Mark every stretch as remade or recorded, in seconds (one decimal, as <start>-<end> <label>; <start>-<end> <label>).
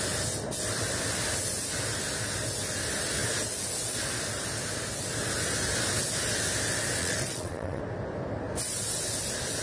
0.0-7.0 recorded; 7.0-7.8 remade; 7.8-9.6 recorded